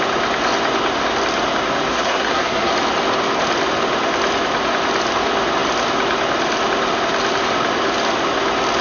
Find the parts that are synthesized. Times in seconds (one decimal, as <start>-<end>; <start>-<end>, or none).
1.9-2.7